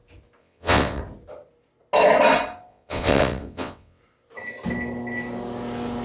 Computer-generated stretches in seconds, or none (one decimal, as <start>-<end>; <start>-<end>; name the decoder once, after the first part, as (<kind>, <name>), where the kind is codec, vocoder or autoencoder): 0.4-1.0 (vocoder, WaveNeXt); 2.7-4.0